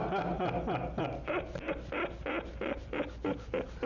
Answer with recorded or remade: recorded